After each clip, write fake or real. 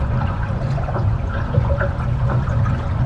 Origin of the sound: fake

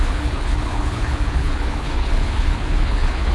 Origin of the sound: fake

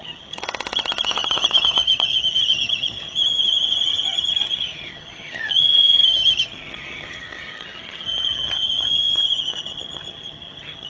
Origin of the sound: fake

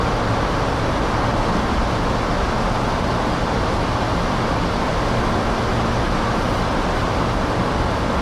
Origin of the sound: real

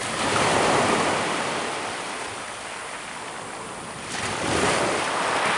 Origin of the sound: real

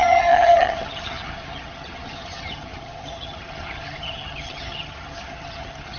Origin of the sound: fake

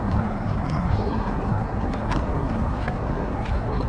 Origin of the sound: fake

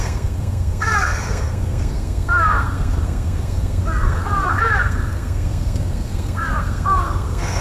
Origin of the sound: fake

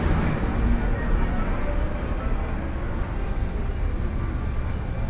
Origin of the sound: real